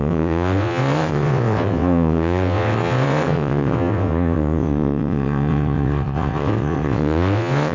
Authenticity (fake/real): fake